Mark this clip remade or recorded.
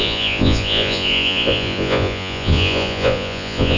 remade